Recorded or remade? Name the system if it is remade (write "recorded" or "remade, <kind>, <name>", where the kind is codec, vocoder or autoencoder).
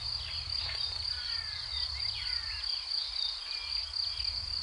recorded